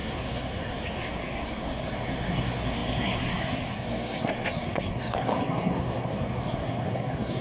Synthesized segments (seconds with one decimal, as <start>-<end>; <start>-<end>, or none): 0.0-7.4